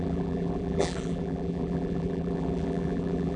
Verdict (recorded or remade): remade